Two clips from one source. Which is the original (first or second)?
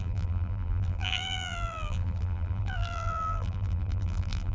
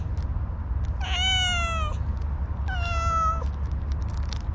second